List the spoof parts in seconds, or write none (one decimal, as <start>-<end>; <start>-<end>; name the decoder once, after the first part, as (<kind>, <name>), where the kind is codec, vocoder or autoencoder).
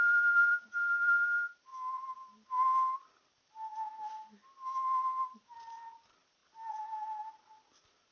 none